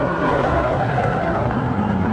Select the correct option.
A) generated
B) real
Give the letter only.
A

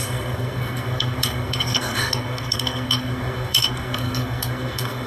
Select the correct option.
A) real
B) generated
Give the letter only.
B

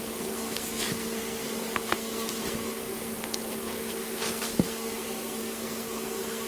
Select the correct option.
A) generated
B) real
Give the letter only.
A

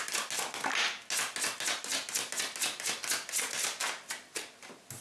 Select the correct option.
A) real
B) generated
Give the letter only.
A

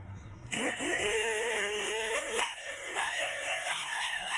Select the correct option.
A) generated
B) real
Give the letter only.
A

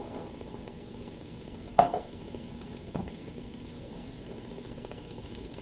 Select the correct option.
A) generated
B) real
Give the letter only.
A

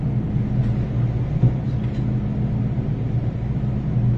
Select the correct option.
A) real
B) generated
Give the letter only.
A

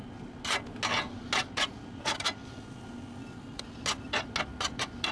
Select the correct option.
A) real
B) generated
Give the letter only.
A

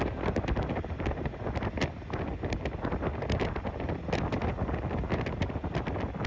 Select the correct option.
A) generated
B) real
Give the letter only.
B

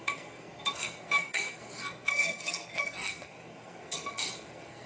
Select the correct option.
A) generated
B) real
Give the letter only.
A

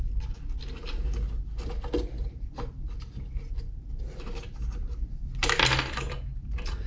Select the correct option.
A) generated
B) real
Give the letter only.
B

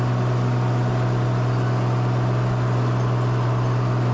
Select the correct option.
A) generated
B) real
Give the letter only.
B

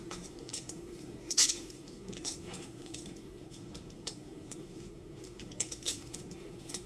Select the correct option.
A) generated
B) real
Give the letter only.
A